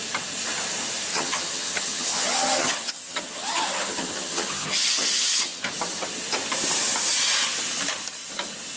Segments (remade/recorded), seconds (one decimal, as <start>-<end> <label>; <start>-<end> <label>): 0.0-1.1 recorded; 1.1-5.6 remade; 5.6-8.8 recorded